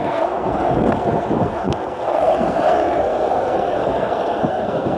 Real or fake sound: fake